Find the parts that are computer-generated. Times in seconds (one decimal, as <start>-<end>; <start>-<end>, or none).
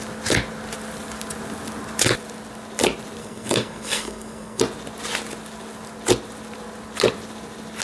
3.2-4.6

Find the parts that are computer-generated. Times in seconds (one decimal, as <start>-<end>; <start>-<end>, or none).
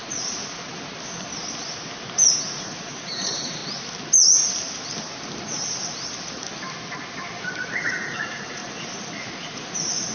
0.0-0.4; 2.3-3.6; 7.8-8.6; 9.2-10.1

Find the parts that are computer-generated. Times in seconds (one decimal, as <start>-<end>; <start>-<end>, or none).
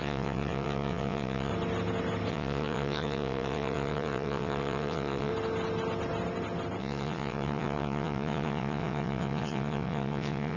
0.0-1.5; 2.3-5.3; 6.8-10.6